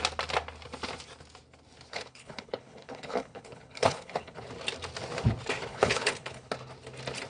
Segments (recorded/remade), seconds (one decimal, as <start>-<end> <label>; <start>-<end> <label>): 0.0-1.9 recorded; 1.9-4.5 remade; 4.5-5.7 recorded; 5.7-6.5 remade; 6.5-7.3 recorded